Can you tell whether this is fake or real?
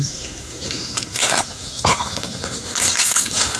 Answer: fake